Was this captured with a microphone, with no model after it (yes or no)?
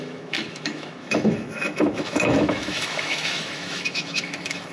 no